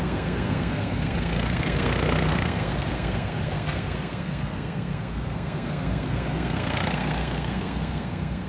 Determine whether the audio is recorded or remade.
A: remade